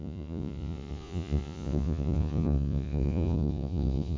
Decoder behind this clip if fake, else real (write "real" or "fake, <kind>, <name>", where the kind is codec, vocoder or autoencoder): fake, vocoder, Vocos